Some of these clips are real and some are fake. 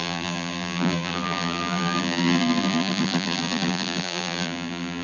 fake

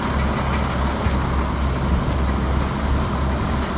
real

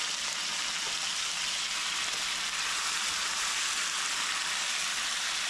real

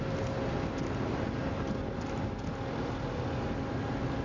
real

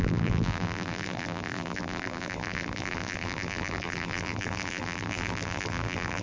fake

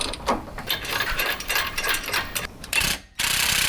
fake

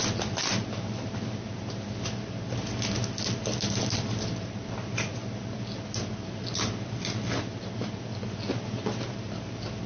real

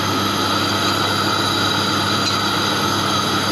real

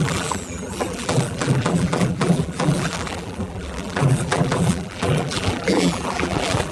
fake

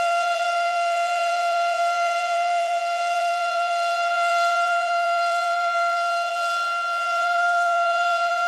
fake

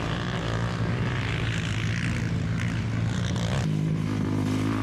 real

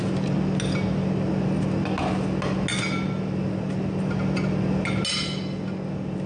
real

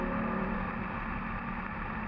fake